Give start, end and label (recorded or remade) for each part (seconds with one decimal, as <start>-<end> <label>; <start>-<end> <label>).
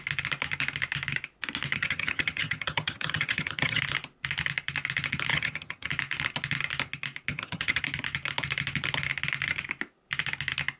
0.0-1.8 recorded; 1.8-3.8 remade; 3.8-5.3 recorded; 5.3-5.9 remade; 5.9-7.3 recorded; 7.3-7.8 remade; 7.8-10.8 recorded